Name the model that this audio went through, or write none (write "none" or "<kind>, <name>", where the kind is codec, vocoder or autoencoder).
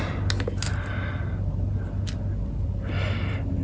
none